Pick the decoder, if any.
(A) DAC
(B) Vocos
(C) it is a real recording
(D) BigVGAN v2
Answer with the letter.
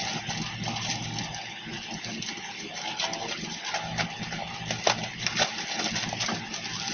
C